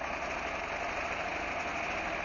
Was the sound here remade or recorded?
recorded